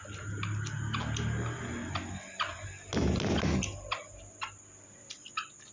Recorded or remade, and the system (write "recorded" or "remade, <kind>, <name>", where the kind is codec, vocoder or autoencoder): recorded